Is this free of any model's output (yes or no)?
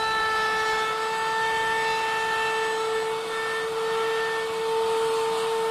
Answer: yes